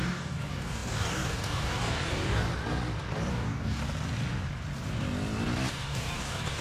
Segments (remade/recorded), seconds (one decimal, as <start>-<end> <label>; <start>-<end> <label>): 0.0-2.5 remade; 2.5-3.3 recorded; 3.3-3.8 remade; 3.8-5.7 recorded; 5.7-6.6 remade